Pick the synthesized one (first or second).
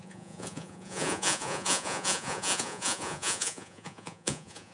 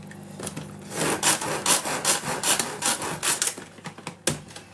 first